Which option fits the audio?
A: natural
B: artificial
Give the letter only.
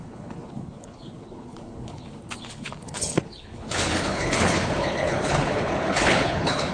B